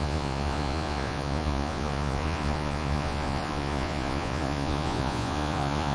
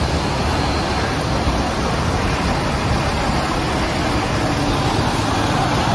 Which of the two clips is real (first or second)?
second